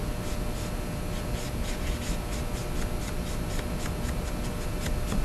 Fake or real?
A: real